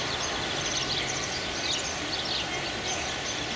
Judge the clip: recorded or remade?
recorded